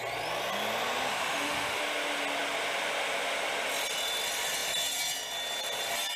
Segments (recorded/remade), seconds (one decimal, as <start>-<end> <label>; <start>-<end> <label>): 0.0-1.1 recorded; 1.1-1.8 remade; 1.8-6.2 recorded